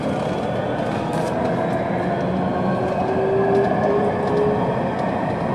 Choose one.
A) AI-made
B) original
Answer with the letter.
B